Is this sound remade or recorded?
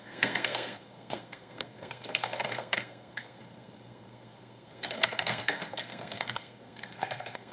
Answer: remade